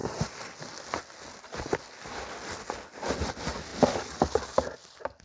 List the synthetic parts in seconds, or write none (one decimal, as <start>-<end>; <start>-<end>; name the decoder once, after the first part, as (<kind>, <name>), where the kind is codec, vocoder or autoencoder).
none